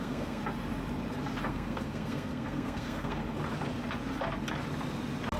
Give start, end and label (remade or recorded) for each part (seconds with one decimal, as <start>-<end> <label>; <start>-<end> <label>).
0.0-0.4 remade; 0.4-1.5 recorded; 1.5-3.2 remade; 3.2-5.4 recorded